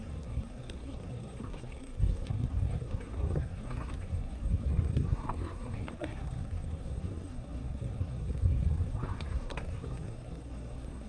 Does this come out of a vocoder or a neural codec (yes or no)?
yes